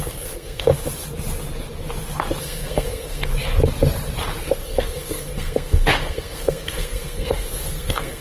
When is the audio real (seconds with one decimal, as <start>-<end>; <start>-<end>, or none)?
0.7-2.4; 3.3-4.4